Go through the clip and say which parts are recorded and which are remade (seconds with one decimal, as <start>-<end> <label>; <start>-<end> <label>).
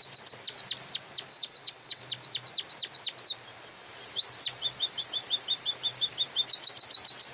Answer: 0.0-1.3 recorded; 1.3-2.0 remade; 2.0-7.3 recorded